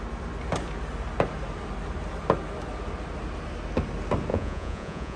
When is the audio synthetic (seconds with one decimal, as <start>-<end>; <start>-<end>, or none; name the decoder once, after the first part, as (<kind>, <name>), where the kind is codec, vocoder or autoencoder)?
4.3-5.2 (vocoder, Vocos)